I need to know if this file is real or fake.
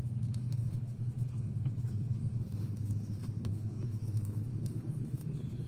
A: fake